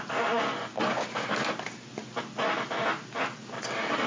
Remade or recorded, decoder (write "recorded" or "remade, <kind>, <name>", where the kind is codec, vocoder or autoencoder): recorded